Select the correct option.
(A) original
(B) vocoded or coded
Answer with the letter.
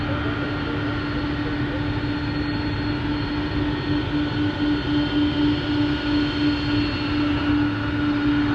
A